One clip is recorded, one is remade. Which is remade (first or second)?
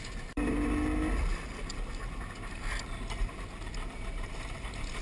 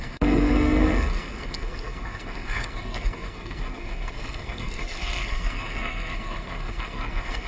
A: second